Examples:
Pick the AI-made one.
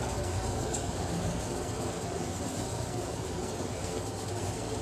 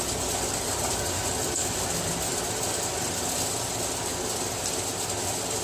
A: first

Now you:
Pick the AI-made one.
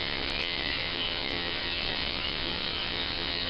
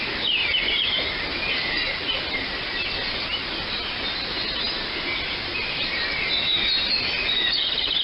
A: first